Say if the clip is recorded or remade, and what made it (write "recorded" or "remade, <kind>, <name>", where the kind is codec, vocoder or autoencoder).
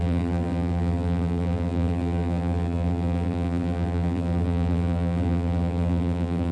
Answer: remade, vocoder, BigVGAN v2